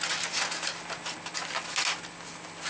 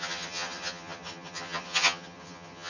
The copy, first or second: second